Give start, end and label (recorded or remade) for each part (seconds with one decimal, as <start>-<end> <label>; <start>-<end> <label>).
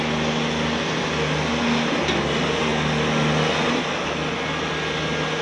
0.0-5.4 recorded